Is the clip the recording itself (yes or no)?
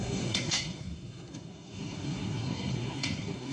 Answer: no